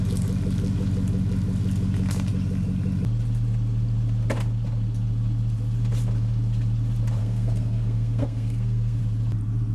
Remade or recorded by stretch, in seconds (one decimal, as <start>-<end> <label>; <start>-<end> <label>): 0.0-7.2 recorded; 7.2-9.0 remade; 9.0-9.7 recorded